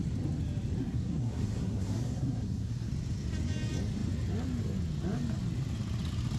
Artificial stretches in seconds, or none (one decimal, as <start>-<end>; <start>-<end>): 0.8-2.9